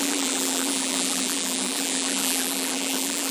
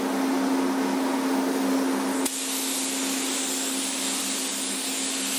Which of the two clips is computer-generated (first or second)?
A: first